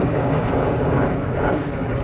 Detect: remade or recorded remade